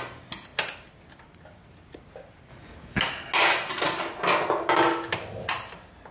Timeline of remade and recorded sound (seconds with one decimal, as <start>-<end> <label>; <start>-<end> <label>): 0.0-2.5 recorded; 2.5-3.0 remade; 3.0-6.1 recorded